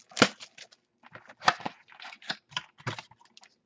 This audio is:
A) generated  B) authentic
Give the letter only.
B